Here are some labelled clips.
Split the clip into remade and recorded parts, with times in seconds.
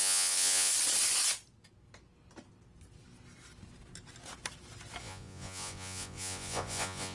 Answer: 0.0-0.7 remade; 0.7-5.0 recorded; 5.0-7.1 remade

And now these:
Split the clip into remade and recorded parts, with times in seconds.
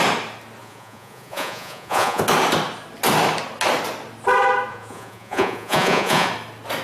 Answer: 0.0-0.6 recorded; 0.6-2.2 remade; 2.2-4.7 recorded; 4.7-6.3 remade; 6.3-6.8 recorded